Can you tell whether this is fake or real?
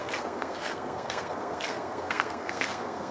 fake